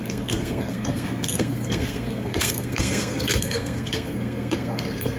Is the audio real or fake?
fake